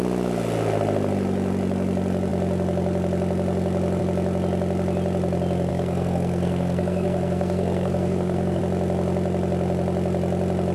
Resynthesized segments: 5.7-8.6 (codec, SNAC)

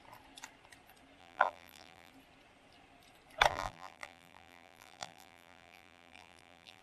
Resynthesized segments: 1.2-2.1 (vocoder, BigVGAN v2); 3.5-6.8

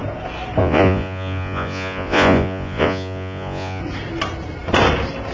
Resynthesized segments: 0.6-3.8 (vocoder, Vocos)

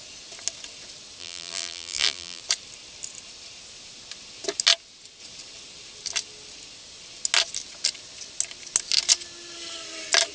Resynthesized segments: 1.2-2.4 (vocoder, BigVGAN v2)